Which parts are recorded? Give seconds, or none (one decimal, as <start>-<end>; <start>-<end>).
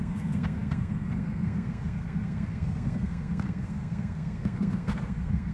none